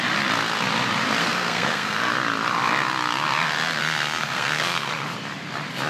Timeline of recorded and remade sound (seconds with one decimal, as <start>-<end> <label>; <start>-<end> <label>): 0.0-1.2 recorded; 1.2-2.1 remade; 2.1-3.8 recorded; 3.8-4.9 remade; 4.9-5.9 recorded